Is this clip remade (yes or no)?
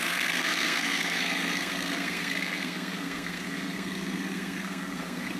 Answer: yes